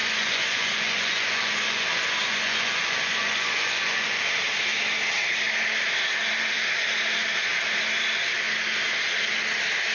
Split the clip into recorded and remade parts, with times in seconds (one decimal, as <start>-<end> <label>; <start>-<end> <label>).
0.0-4.2 remade; 4.2-9.9 recorded